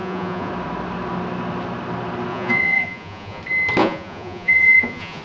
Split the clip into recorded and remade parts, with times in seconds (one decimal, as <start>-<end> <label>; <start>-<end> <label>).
0.0-0.5 remade; 0.5-2.3 recorded; 2.3-3.4 remade; 3.4-3.8 recorded; 3.8-5.2 remade